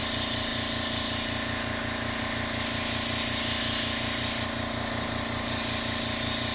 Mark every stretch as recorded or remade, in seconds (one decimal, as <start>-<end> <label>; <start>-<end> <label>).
0.0-6.5 recorded